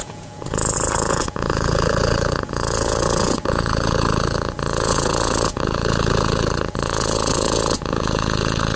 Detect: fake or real fake